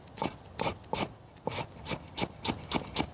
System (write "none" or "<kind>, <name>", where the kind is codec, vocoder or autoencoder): none